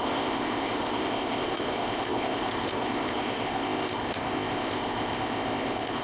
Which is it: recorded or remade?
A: remade